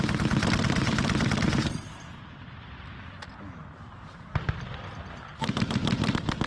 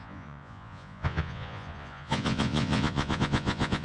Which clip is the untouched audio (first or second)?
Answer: first